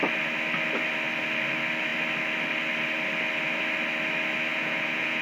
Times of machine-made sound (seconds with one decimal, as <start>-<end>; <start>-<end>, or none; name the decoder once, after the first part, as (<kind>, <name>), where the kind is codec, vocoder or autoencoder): 4.5-5.2 (vocoder, Vocos)